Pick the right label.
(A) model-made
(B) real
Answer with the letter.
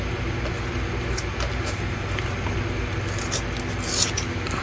B